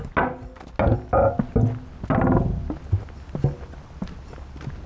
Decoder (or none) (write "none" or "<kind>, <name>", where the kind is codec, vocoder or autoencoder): none